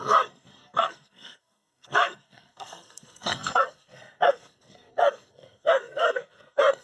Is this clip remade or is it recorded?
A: remade